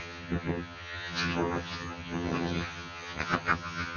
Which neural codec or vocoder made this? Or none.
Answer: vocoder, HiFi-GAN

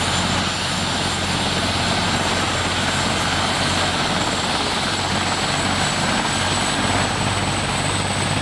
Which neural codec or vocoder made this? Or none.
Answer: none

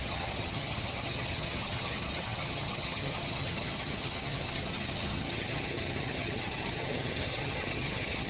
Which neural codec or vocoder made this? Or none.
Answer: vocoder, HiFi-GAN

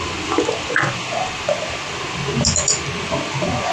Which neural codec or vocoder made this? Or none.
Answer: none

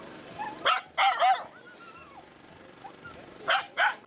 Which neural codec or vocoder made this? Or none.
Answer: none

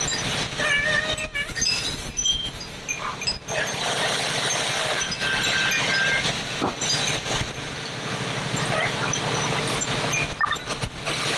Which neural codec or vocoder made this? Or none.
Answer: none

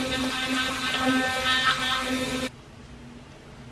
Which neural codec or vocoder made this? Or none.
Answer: none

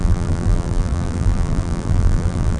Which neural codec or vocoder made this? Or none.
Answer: vocoder, BigVGAN v2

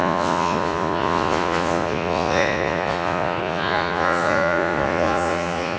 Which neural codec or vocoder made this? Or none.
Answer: vocoder, Vocos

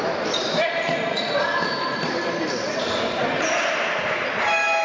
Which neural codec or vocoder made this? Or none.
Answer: vocoder, BigVGAN v2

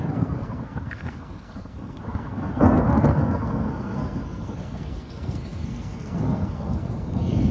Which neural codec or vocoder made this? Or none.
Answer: codec, SNAC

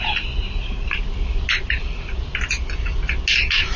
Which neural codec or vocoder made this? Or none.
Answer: none